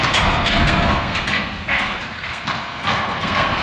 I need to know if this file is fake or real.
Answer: fake